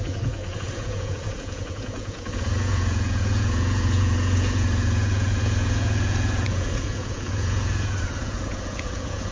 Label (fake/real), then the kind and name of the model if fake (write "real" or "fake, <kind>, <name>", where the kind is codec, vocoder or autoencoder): fake, vocoder, Vocos